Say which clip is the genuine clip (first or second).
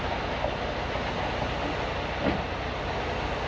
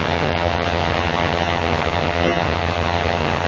first